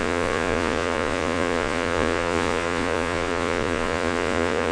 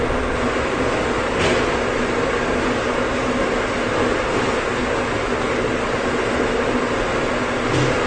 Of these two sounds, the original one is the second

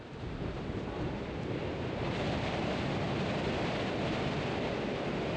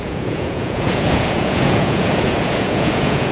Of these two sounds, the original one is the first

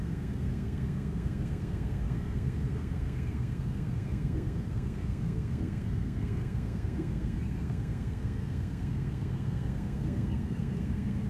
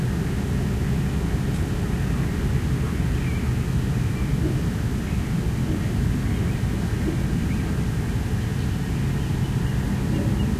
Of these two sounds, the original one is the second